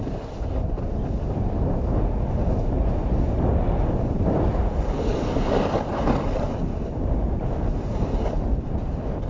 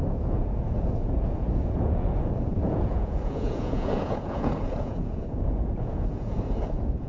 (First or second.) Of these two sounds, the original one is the first